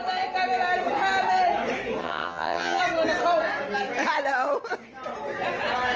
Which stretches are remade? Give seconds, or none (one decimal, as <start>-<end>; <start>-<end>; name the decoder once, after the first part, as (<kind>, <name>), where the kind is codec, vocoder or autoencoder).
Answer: 2.0-2.8 (vocoder, HiFi-GAN)